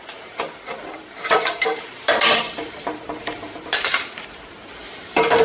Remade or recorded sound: remade